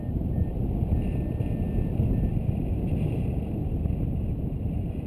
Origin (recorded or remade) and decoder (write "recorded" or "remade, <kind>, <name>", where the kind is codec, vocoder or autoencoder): recorded